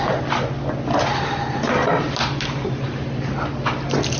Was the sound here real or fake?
real